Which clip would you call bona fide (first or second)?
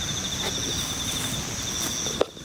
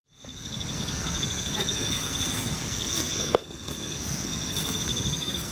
first